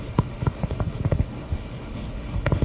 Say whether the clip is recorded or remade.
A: remade